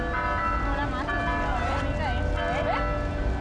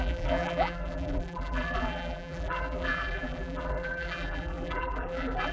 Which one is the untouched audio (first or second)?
first